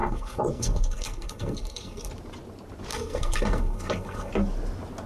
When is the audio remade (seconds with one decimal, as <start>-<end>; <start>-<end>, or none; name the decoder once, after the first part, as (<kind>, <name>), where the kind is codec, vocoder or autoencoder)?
0.0-2.1 (codec, SNAC); 2.9-4.3

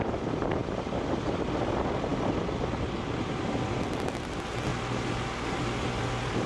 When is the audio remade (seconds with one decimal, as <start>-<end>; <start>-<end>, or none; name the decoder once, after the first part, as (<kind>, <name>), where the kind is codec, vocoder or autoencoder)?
0.6-1.3 (vocoder, BigVGAN v2)

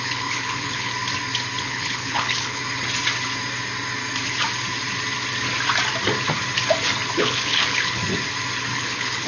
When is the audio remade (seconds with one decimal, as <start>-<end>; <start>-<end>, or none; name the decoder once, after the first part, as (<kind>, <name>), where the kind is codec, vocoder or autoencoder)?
0.0-0.9 (codec, HILCodec); 1.6-2.6; 7.2-8.0; 8.6-9.3

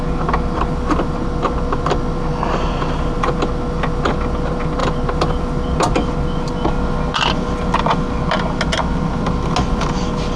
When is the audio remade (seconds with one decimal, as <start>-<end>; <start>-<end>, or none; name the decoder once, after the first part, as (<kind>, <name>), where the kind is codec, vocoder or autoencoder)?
none